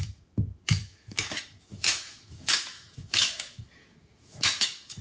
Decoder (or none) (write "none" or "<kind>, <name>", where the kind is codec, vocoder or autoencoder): autoencoder, DAC-VAE